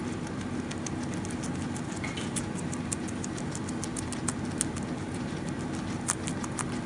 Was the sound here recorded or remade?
recorded